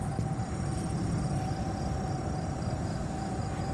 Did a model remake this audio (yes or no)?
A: no